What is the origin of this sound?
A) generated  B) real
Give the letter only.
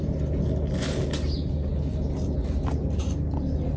B